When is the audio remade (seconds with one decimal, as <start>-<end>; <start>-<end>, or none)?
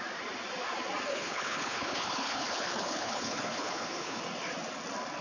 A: 1.1-4.2